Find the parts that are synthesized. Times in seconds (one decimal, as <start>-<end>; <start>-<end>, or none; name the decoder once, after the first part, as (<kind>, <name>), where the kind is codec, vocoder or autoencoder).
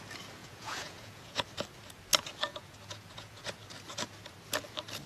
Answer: 0.4-1.4 (vocoder, Vocos); 2.5-3.5